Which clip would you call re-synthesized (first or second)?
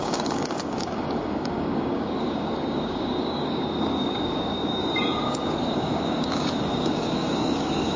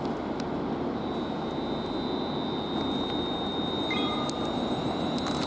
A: first